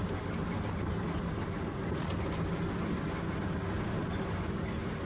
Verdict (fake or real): real